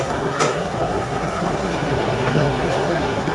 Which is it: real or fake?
fake